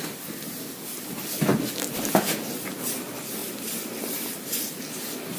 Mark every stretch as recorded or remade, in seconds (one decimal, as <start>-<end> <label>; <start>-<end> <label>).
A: 0.0-5.4 recorded